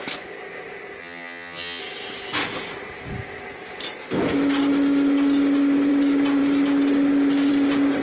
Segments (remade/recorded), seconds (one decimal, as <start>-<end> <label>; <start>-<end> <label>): 0.0-1.0 recorded; 1.0-1.8 remade; 1.8-8.0 recorded